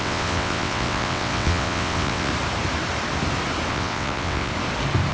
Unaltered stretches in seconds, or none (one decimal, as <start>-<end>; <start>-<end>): 2.3-3.7; 4.5-5.1